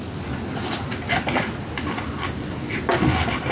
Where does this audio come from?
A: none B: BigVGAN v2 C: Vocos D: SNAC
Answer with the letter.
A